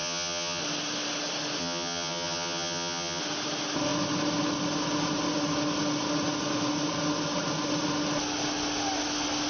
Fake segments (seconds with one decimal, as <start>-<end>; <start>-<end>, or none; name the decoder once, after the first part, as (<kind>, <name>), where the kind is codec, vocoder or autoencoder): 0.0-0.6 (vocoder, HiFi-GAN); 1.6-3.2